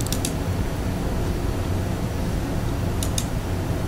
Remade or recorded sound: recorded